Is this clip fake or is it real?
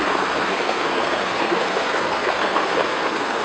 fake